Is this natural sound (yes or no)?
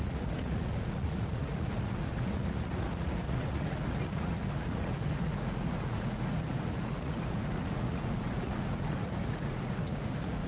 no